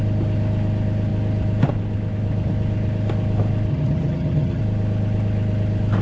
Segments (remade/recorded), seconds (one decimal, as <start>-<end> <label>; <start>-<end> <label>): 0.0-3.7 recorded; 3.7-4.6 remade; 4.6-6.0 recorded